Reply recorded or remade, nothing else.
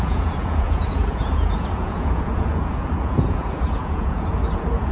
remade